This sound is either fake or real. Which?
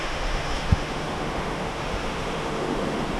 fake